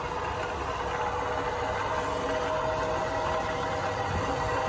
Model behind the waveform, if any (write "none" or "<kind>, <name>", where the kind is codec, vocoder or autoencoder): none